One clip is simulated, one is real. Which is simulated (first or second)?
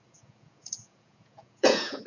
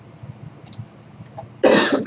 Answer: first